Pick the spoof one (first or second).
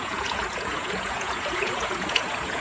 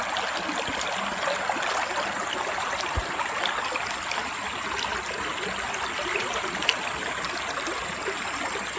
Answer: first